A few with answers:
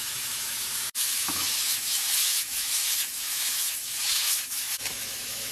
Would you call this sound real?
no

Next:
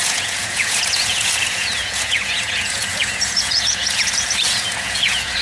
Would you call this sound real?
no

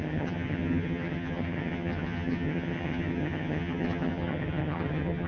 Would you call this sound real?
no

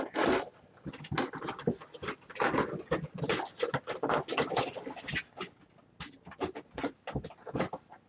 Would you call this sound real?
yes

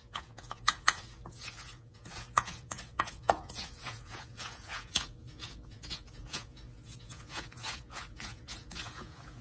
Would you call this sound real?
no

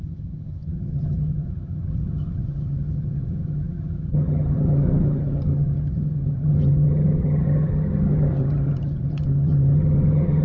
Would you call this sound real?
no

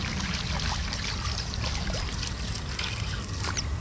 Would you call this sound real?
yes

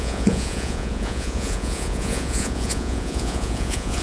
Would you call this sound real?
no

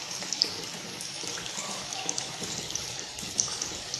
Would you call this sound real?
no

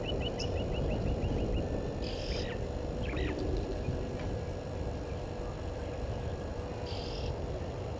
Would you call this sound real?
no